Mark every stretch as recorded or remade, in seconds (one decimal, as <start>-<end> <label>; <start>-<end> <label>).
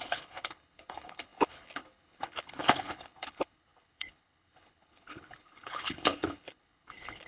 0.0-7.3 remade